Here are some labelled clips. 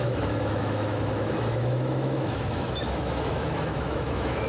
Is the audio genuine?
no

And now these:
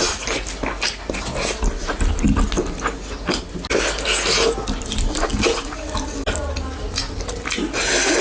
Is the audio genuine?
yes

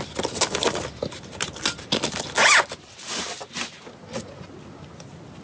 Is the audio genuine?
yes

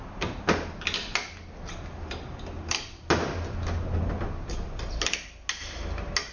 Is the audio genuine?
yes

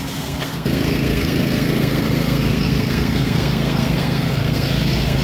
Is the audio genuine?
no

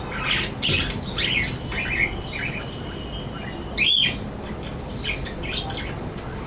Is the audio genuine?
yes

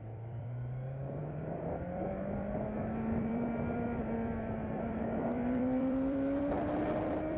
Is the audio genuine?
no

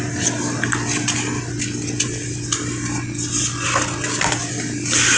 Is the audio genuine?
yes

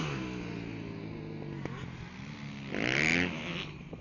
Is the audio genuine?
yes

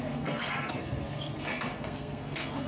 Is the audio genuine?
no